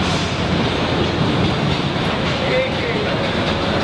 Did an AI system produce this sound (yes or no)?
no